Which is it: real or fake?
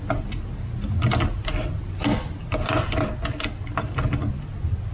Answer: real